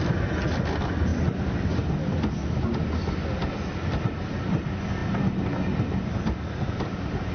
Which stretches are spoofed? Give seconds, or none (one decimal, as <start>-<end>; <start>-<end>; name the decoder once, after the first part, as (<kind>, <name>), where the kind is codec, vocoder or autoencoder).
none